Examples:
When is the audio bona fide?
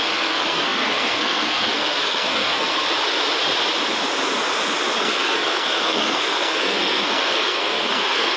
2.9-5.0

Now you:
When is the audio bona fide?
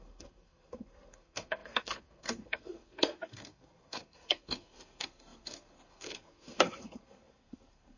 none